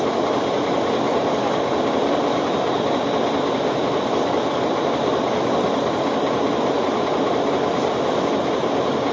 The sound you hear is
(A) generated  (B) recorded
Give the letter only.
B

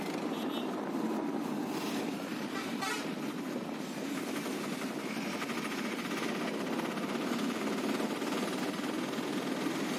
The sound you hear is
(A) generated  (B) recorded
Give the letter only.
B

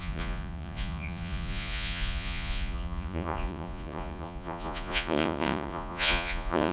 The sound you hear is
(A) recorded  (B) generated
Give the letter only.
B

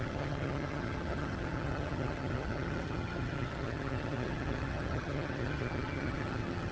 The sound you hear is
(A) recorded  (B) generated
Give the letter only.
B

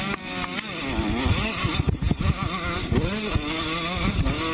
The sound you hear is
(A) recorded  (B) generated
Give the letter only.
A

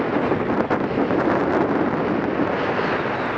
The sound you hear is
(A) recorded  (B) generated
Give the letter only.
A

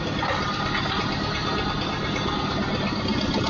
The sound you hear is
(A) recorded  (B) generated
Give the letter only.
A